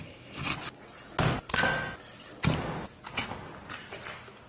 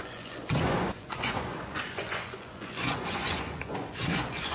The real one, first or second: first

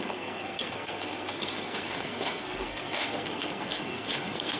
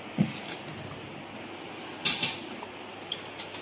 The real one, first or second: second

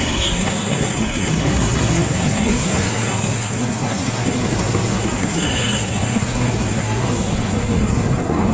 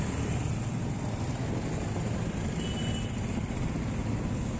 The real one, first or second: second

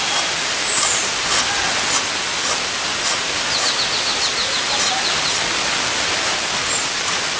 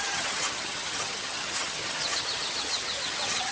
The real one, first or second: first